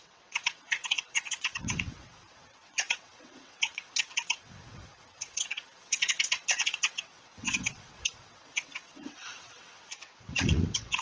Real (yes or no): no